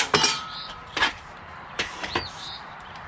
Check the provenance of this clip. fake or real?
fake